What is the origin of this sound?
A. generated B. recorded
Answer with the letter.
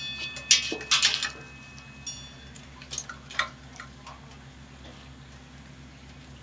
B